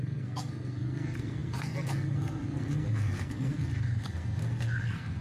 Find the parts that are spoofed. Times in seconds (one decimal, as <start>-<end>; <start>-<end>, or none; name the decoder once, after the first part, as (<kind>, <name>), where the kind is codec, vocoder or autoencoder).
0.0-5.2 (codec, SNAC)